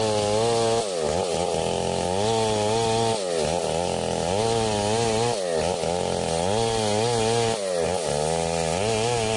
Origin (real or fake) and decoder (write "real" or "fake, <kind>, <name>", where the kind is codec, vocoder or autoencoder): real